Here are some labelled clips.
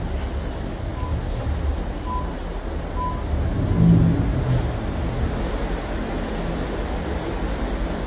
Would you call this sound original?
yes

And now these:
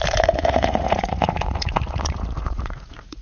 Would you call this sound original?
no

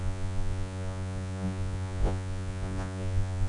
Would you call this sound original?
no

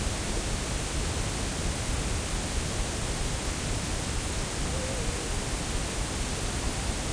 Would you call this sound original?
yes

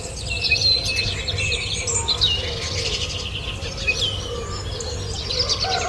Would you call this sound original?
yes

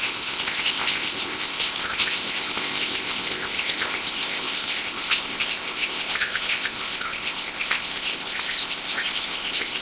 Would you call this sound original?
no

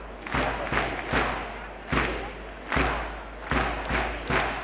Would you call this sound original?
yes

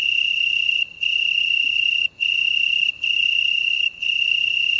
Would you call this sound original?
no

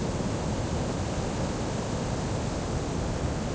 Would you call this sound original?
yes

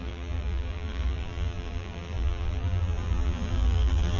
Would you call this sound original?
no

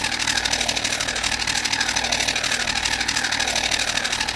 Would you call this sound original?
yes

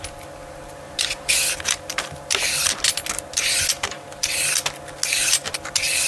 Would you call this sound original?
yes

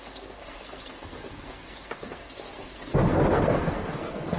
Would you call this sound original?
no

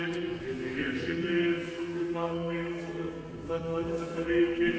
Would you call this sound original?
no